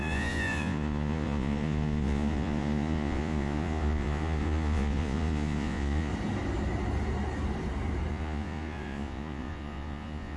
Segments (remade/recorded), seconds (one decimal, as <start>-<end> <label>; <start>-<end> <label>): 0.0-6.1 remade; 6.1-8.1 recorded; 8.1-10.4 remade

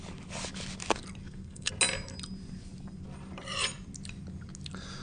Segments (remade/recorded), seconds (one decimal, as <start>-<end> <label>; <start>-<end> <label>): 0.0-1.2 recorded; 1.2-1.7 remade; 1.7-5.0 recorded

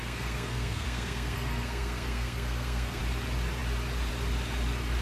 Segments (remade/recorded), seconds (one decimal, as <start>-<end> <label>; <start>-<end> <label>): 0.0-3.0 remade; 3.0-5.0 recorded

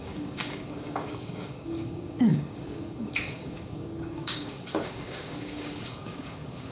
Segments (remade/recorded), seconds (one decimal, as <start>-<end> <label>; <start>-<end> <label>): 0.0-6.7 remade